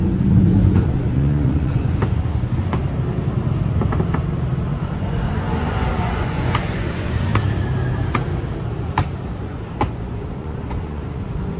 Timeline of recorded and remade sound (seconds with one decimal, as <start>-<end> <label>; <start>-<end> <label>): 0.0-2.8 remade; 2.8-4.9 recorded; 4.9-7.3 remade; 7.3-9.3 recorded; 9.3-11.6 remade